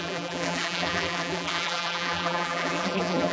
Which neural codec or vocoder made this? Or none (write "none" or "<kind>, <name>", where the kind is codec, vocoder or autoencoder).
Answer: vocoder, BigVGAN v2